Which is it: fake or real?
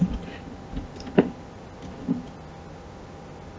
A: real